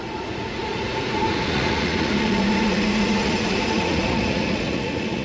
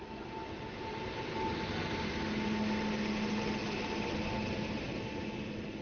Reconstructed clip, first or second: first